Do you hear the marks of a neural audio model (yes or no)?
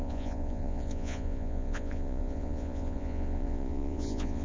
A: yes